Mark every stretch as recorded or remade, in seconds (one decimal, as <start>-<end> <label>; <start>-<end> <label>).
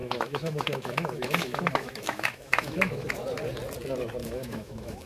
0.0-3.1 remade; 3.1-4.2 recorded; 4.2-5.1 remade